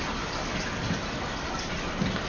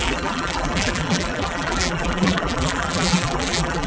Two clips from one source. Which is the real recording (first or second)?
first